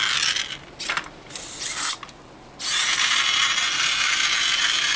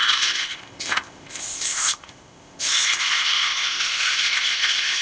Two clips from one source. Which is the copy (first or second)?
second